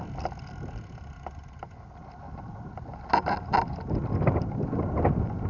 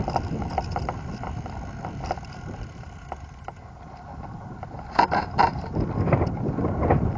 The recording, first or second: first